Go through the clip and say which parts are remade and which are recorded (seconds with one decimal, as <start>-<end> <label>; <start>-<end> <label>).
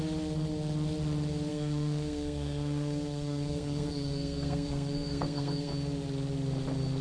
0.0-1.5 recorded; 1.5-5.7 remade; 5.7-7.0 recorded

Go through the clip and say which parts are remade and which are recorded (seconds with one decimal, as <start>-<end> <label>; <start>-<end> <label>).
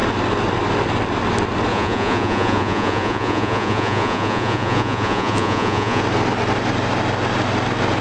0.0-1.7 recorded; 1.7-6.0 remade; 6.0-8.0 recorded